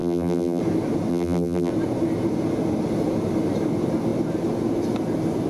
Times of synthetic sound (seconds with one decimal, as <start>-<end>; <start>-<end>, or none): 0.0-0.6; 1.1-1.7